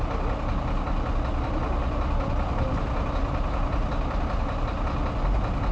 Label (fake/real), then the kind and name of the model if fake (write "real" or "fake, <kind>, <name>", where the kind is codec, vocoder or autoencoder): real